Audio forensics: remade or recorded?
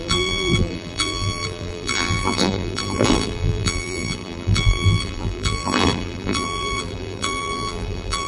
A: remade